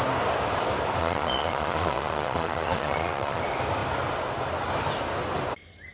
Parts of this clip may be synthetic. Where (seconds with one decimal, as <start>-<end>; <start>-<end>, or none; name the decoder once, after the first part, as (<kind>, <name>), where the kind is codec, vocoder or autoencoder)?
1.0-3.4 (vocoder, Vocos)